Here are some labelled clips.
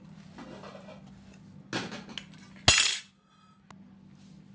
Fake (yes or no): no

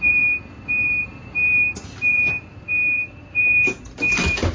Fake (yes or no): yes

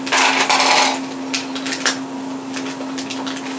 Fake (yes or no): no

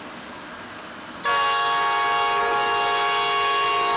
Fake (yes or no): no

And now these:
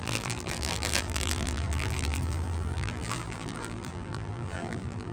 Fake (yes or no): yes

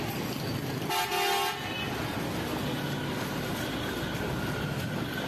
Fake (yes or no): no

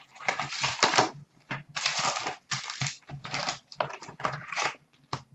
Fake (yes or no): yes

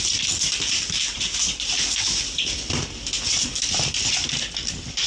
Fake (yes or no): yes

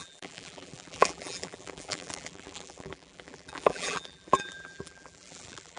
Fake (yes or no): yes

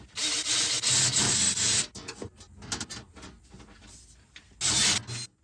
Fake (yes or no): no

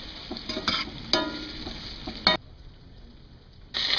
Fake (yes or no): no